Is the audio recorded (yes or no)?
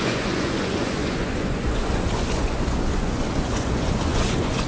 no